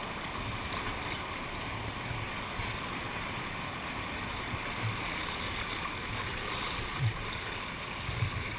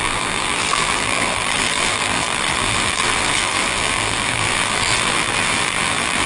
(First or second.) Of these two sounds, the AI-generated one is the second